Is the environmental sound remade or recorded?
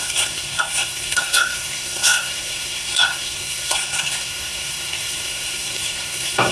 remade